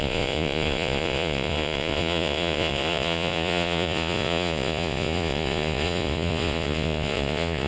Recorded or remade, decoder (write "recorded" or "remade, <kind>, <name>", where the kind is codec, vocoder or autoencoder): remade, vocoder, Vocos